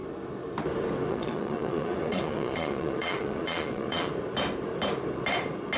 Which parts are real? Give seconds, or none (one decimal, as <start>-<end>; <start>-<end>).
0.0-1.1; 4.1-5.8